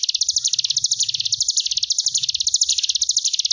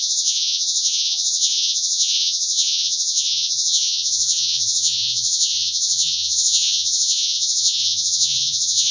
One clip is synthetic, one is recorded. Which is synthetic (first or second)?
second